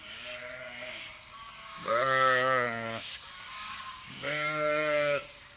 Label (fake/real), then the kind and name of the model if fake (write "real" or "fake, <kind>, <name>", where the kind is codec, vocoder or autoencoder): fake, codec, DAC